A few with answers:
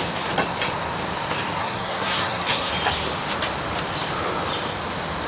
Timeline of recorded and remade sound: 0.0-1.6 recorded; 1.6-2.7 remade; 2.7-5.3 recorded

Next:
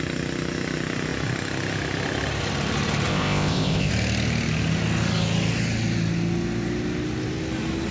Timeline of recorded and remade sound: 0.0-3.1 recorded; 3.1-3.9 remade; 3.9-7.9 recorded

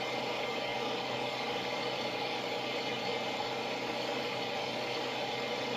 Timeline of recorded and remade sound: 0.0-5.8 remade